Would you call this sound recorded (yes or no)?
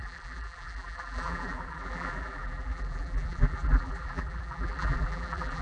no